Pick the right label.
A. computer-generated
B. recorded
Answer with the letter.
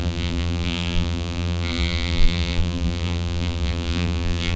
A